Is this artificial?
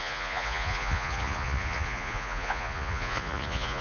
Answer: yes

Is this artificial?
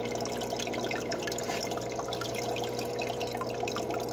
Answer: no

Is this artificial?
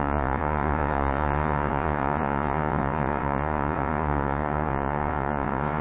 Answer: yes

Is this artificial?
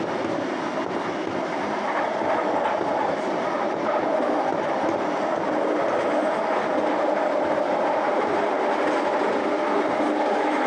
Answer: no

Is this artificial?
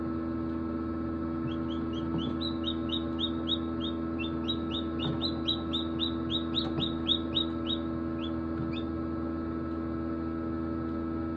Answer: no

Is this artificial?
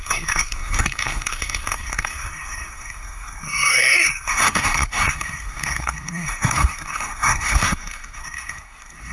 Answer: yes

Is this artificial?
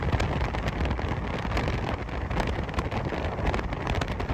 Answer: no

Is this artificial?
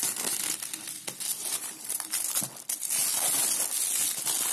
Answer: no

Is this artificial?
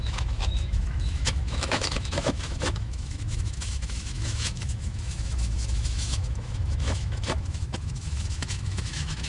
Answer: yes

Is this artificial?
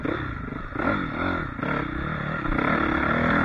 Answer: no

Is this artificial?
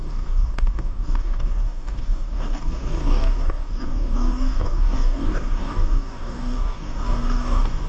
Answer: yes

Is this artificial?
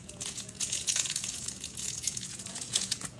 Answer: yes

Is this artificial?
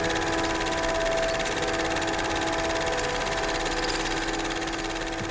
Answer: no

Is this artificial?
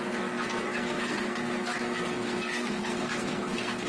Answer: yes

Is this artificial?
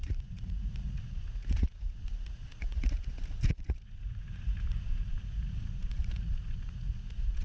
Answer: yes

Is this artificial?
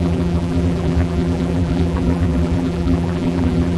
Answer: yes